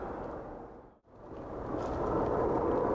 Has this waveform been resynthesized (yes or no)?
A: no